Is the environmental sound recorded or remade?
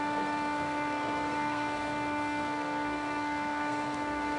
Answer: remade